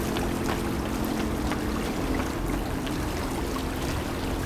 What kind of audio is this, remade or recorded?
recorded